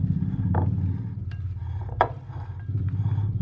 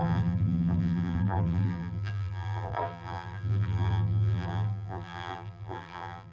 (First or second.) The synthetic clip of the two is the second